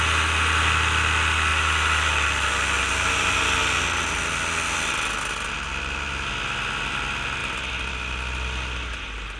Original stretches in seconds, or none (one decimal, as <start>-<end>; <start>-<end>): 0.0-9.4